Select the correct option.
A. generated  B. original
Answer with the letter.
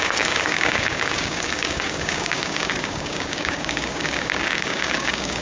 A